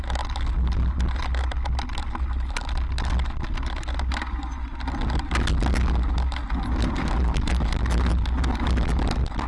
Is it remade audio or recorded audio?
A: recorded